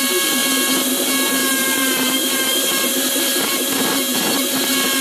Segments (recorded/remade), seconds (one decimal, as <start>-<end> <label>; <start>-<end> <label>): 0.0-1.4 recorded; 1.4-4.4 remade; 4.4-5.0 recorded